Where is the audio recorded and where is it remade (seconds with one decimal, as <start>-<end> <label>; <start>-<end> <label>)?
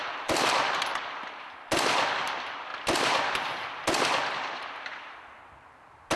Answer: 0.0-1.3 remade; 1.3-6.2 recorded